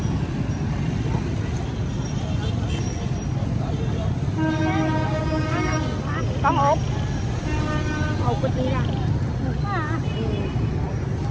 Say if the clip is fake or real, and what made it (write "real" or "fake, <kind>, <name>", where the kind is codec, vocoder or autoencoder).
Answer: real